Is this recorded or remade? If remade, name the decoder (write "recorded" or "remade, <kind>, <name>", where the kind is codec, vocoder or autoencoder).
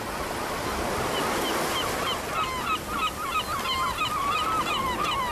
recorded